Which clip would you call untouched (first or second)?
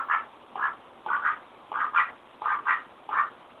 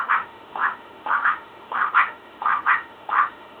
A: first